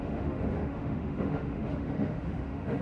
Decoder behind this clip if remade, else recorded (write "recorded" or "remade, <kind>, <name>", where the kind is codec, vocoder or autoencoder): remade, autoencoder, DAC-VAE